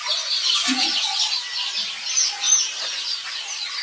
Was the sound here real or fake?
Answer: fake